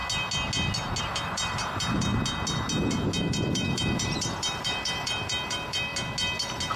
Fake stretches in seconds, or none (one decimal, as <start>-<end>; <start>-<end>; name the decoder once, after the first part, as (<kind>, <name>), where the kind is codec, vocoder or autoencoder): 1.0-2.1 (vocoder, BigVGAN v2); 3.2-5.9